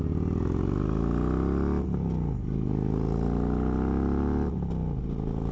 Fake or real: real